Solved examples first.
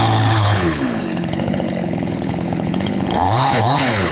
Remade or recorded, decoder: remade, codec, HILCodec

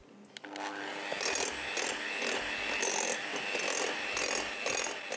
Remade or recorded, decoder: recorded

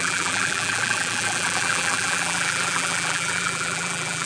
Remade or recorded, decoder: remade, vocoder, BigVGAN v2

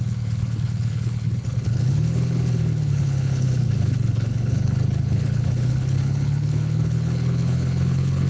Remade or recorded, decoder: remade, codec, HILCodec